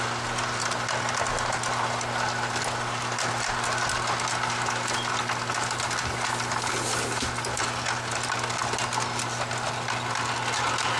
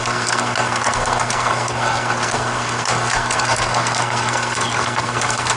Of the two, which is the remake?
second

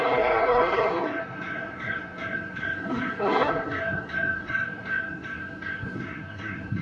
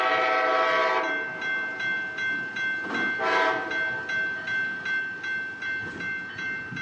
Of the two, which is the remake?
first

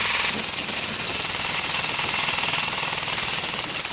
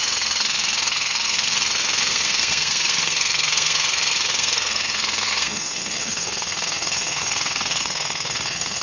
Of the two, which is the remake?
second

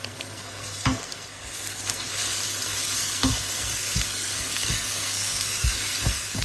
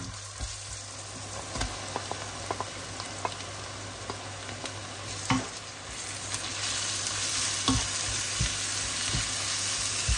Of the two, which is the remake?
first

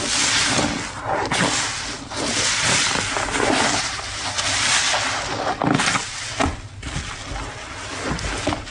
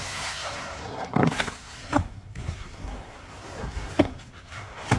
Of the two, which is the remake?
second